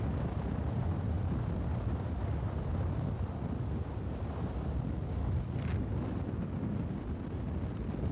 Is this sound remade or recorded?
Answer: recorded